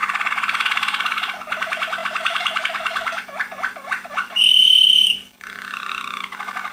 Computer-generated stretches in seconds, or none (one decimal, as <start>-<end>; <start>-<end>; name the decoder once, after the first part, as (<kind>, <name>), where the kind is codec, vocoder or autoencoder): 0.0-6.7 (codec, DAC)